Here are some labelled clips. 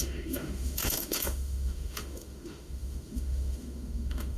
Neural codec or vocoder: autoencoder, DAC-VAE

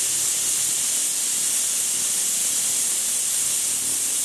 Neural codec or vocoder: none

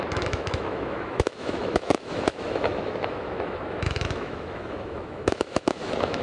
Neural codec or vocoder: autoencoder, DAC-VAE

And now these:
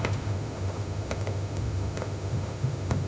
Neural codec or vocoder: autoencoder, DAC-VAE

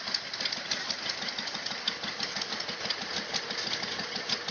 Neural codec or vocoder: none